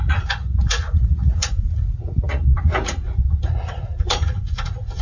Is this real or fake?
fake